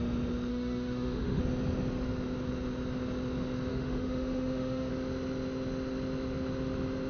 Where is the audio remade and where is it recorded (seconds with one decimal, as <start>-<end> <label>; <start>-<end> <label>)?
0.0-0.5 recorded; 0.5-1.4 remade; 1.4-3.7 recorded; 3.7-4.9 remade; 4.9-7.1 recorded